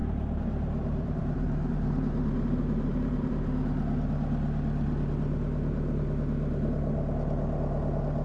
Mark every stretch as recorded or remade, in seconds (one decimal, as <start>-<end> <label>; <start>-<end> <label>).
0.0-3.3 remade; 3.3-8.2 recorded